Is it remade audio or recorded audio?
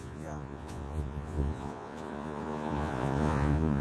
remade